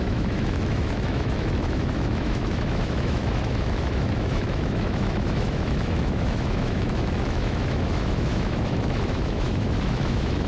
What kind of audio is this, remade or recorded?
remade